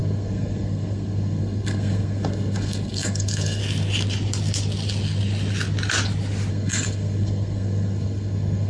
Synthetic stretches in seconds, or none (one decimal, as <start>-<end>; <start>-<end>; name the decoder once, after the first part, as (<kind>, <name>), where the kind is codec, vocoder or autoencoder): 0.0-3.6 (codec, SNAC); 6.5-8.7